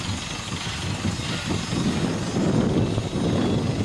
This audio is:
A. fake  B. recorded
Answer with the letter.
B